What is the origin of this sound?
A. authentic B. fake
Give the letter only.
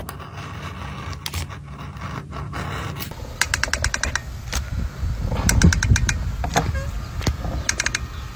A